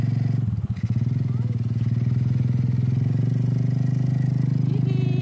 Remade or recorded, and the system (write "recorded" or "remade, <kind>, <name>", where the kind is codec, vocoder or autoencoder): recorded